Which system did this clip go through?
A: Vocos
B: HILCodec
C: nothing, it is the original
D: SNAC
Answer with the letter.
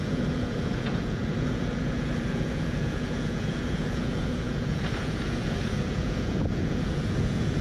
A